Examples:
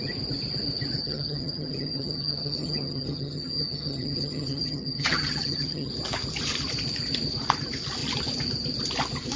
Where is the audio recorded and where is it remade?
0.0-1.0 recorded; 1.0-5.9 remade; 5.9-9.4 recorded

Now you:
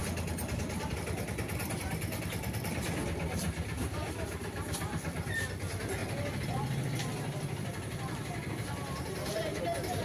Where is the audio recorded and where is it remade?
0.0-10.0 recorded

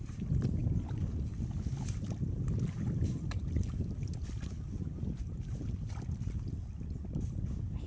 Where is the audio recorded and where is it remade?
0.0-7.9 recorded

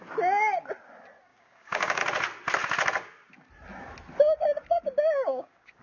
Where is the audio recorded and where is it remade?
0.0-1.3 recorded; 1.3-2.0 remade; 2.0-5.3 recorded; 5.3-5.8 remade

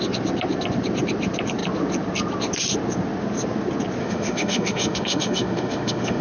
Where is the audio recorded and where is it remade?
0.0-4.0 recorded; 4.0-6.2 remade

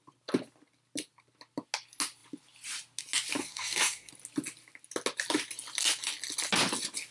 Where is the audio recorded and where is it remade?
0.0-3.4 recorded; 3.4-4.1 remade; 4.1-7.1 recorded

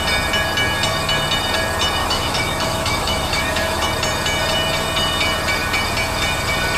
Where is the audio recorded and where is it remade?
0.0-2.0 recorded; 2.0-3.9 remade; 3.9-6.8 recorded